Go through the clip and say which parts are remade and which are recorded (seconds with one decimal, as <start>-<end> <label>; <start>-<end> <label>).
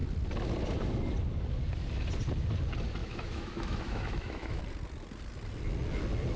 0.0-3.0 recorded; 3.0-4.6 remade; 4.6-6.4 recorded